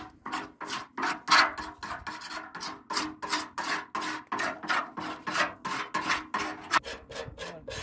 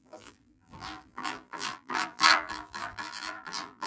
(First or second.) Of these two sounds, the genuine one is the first